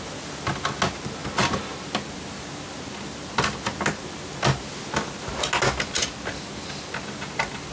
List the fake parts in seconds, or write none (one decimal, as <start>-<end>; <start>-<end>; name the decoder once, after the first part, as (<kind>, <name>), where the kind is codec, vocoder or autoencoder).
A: none